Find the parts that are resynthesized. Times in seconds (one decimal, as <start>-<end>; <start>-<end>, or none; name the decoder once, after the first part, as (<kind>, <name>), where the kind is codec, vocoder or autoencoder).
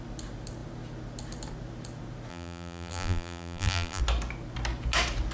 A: 2.3-4.0 (vocoder, BigVGAN v2)